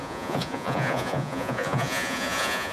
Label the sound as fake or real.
fake